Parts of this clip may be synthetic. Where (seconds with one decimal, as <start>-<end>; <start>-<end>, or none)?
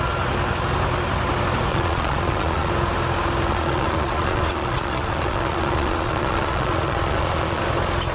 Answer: 1.7-2.7; 3.5-7.6